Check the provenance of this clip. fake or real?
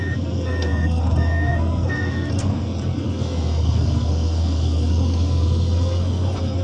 fake